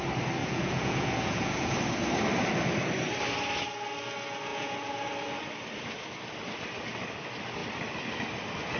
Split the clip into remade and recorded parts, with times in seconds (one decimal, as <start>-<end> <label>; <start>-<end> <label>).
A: 0.0-0.4 recorded; 0.4-1.8 remade; 1.8-4.5 recorded; 4.5-5.0 remade; 5.0-8.8 recorded